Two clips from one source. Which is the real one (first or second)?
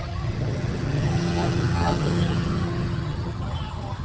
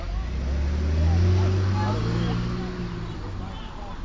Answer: second